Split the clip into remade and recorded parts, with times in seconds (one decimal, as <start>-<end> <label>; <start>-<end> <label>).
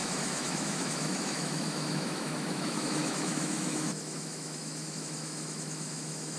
0.0-6.4 remade